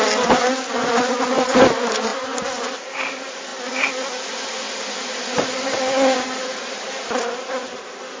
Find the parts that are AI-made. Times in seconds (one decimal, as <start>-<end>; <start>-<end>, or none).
none